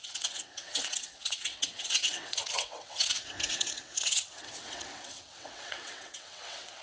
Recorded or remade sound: remade